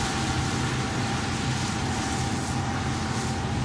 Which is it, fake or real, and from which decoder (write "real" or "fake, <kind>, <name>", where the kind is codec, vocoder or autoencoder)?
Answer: real